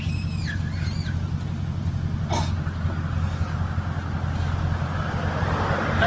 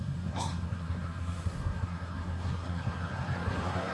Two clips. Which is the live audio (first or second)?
first